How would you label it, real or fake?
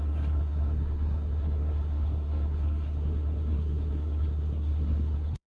fake